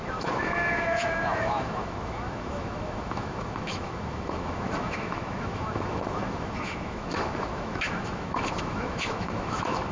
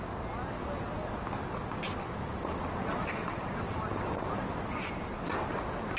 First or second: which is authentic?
second